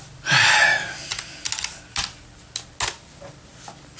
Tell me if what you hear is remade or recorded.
recorded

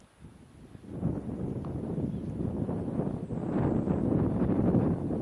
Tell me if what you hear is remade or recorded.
recorded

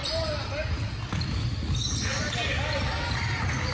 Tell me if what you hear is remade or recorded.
recorded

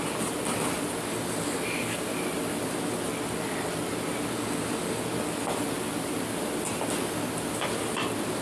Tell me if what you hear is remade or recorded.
recorded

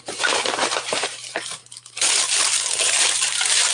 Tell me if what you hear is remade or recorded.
remade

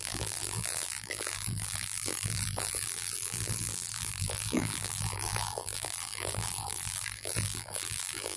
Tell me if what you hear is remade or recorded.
remade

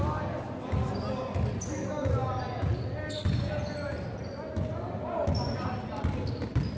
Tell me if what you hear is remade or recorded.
recorded